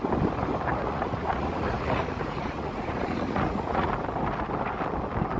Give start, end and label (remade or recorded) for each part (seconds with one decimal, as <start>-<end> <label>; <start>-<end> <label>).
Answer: 0.0-0.7 recorded; 0.7-3.9 remade; 3.9-5.4 recorded